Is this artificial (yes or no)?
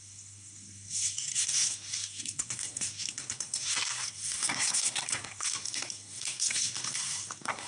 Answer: yes